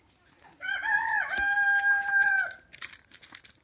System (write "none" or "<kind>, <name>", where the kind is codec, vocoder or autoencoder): vocoder, BigVGAN v2